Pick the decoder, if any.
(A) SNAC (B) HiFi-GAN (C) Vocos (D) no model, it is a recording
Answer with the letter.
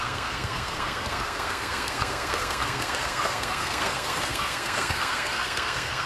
A